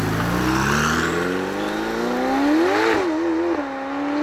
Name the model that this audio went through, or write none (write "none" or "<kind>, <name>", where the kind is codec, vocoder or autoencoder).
none